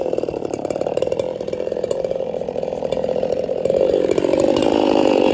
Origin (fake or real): fake